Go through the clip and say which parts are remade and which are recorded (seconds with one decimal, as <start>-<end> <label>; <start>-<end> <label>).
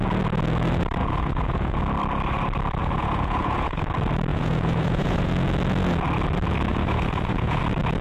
0.0-1.0 recorded; 1.0-1.8 remade; 1.8-2.8 recorded; 2.8-3.8 remade; 3.8-4.3 recorded; 4.3-5.3 remade; 5.3-6.7 recorded; 6.7-7.6 remade; 7.6-8.0 recorded